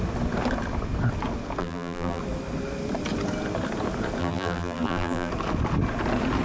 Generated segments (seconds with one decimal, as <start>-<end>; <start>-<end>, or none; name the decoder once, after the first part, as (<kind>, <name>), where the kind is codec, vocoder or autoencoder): 1.6-2.2 (vocoder, BigVGAN v2); 4.2-5.3